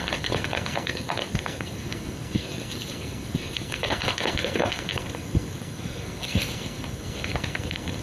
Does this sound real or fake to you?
fake